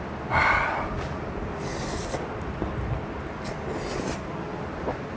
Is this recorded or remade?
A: recorded